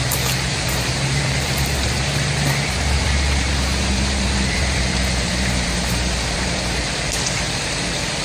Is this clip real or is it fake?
fake